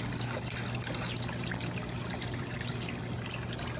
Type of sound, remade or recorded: recorded